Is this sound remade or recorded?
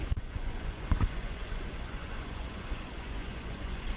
remade